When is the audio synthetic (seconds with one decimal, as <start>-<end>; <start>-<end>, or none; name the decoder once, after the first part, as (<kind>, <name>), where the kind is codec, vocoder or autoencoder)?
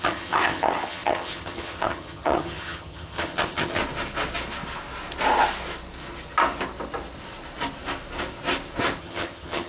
0.0-3.8 (vocoder, HiFi-GAN); 9.0-9.7